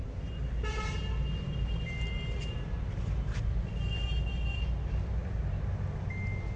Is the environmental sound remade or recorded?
recorded